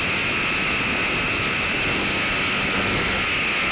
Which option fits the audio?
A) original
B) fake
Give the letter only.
A